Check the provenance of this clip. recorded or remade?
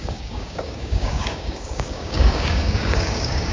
remade